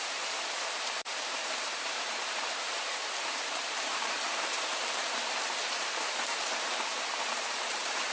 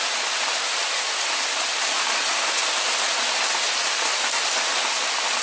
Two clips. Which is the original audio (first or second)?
second